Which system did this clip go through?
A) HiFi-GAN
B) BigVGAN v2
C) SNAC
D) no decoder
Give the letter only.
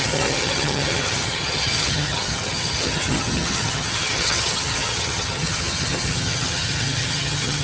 A